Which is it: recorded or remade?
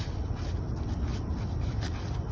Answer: recorded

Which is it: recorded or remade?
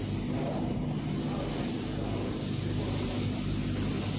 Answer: recorded